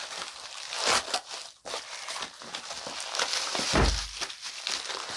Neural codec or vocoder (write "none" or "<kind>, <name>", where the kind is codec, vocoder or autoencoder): none